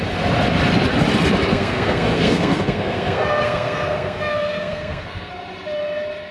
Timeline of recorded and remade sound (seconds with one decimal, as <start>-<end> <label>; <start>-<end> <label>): 0.0-1.5 recorded; 1.5-5.3 remade; 5.3-6.3 recorded